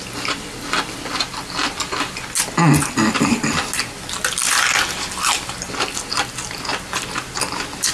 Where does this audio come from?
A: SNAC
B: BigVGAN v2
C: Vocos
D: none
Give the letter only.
D